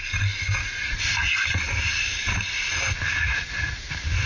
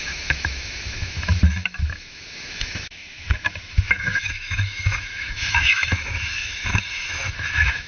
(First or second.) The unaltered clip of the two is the first